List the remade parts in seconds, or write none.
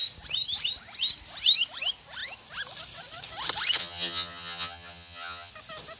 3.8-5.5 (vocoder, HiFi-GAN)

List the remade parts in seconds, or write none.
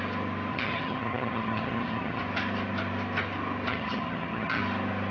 0.5-2.2 (vocoder, HiFi-GAN); 3.7-4.6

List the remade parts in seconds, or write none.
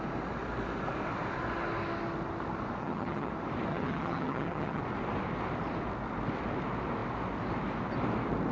2.8-3.3 (vocoder, HiFi-GAN); 3.7-4.8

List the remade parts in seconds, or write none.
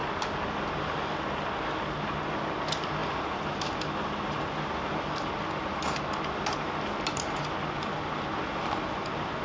none